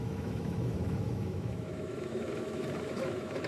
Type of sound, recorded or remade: remade